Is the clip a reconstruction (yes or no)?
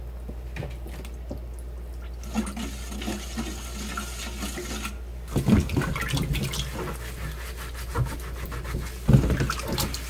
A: no